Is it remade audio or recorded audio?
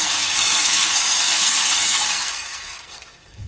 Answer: remade